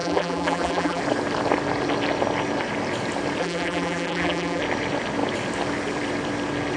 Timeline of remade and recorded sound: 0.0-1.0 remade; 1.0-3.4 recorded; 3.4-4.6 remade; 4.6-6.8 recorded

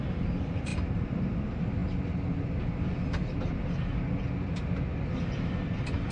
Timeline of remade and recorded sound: 0.0-6.1 recorded

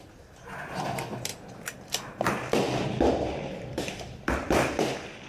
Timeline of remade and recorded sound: 0.0-5.3 remade

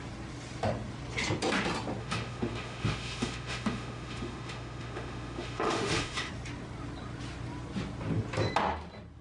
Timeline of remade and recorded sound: 0.0-2.0 recorded; 2.0-6.3 remade; 6.3-9.2 recorded

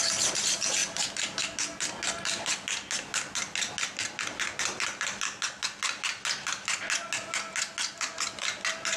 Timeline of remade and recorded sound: 0.0-9.0 recorded

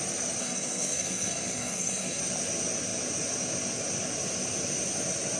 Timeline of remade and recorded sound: 0.0-0.4 recorded; 0.4-2.2 remade; 2.2-5.4 recorded